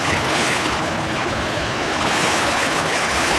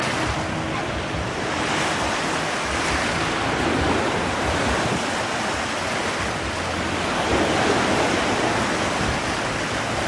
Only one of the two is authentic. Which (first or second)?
second